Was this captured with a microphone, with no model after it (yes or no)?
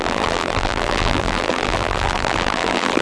no